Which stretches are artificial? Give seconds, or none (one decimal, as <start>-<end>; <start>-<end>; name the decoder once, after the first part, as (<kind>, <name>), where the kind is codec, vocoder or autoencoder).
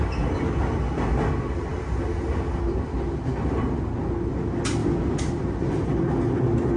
none